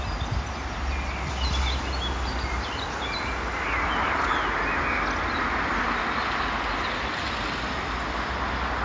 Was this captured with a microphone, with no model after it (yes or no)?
yes